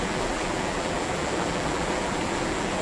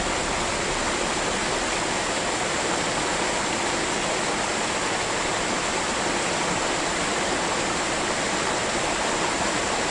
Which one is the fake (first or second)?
first